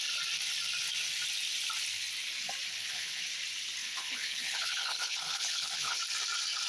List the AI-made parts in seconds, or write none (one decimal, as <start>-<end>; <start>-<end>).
2.7-3.2; 3.8-6.0